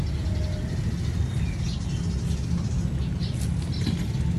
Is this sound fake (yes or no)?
no